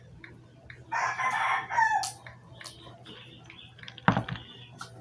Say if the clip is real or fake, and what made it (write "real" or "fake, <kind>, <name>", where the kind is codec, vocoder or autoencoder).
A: real